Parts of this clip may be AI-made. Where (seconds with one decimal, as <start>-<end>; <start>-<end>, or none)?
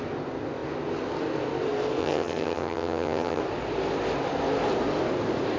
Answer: 2.0-3.4